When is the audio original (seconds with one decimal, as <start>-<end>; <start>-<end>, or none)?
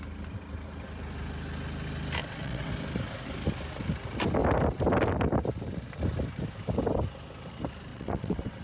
0.0-2.2; 2.7-7.9